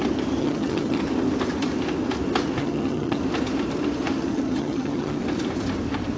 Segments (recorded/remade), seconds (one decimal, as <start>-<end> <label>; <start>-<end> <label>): 0.0-0.4 recorded; 0.4-1.0 remade; 1.0-2.6 recorded; 2.6-3.2 remade; 3.2-4.3 recorded; 4.3-5.2 remade; 5.2-6.2 recorded